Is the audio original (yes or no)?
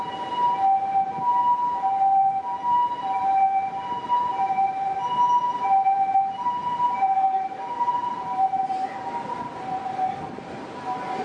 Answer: yes